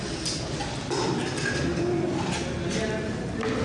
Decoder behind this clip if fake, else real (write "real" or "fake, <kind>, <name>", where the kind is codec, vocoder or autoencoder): real